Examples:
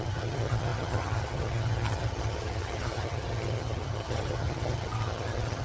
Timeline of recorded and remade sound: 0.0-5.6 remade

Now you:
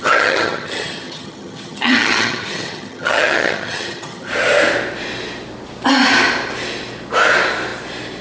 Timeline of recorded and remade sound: 0.0-4.3 remade; 4.3-8.2 recorded